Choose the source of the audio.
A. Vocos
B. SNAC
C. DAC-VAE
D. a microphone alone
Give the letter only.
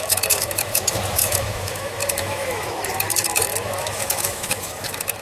C